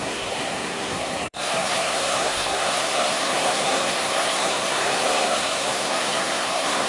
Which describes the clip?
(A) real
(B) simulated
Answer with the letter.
B